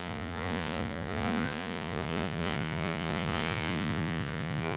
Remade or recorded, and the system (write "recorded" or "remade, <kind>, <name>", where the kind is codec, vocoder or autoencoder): remade, vocoder, Vocos